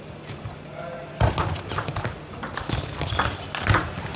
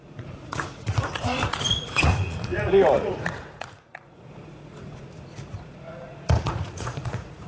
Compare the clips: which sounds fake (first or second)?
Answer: second